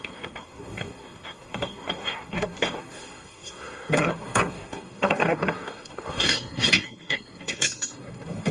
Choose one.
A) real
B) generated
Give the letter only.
B